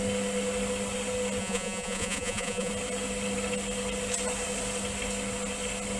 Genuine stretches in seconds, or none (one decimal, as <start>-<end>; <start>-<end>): 0.0-1.4; 2.7-6.0